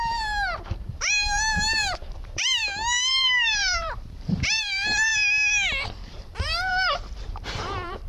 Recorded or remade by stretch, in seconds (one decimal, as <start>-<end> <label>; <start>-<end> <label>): 0.0-2.6 remade; 2.6-3.1 recorded; 3.1-5.1 remade; 5.1-6.1 recorded; 6.1-8.1 remade